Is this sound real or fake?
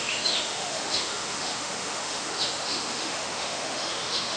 fake